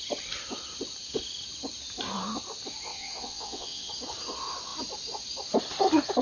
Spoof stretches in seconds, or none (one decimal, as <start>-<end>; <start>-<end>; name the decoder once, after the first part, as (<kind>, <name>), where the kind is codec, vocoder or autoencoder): 2.9-3.9 (vocoder, WaveNeXt)